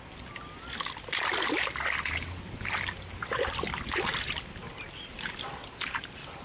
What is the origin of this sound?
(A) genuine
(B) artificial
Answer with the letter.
A